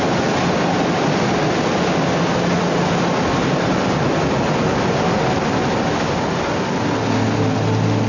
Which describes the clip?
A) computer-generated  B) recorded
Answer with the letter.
B